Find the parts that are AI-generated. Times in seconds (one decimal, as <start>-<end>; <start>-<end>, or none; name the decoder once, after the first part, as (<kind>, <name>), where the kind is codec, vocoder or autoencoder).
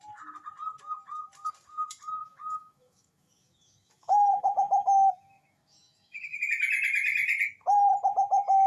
2.2-6.4 (autoencoder, DAC-VAE)